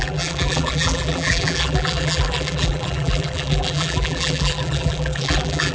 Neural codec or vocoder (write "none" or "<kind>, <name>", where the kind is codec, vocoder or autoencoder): vocoder, BigVGAN v2